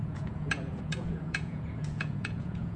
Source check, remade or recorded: remade